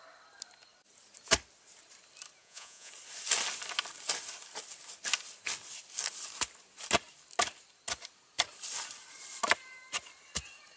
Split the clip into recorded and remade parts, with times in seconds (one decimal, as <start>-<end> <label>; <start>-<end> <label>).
0.0-2.4 recorded; 2.4-2.9 remade; 2.9-10.8 recorded